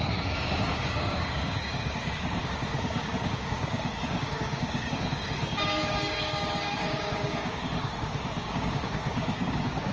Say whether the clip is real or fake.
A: fake